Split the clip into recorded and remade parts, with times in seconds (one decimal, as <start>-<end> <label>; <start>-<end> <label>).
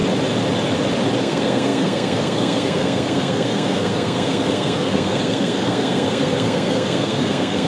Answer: 0.0-1.2 recorded; 1.2-7.7 remade